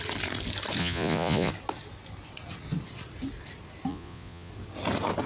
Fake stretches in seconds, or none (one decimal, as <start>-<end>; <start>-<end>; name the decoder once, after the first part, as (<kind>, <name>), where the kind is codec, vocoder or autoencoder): 0.8-1.5 (vocoder, Vocos); 3.9-4.5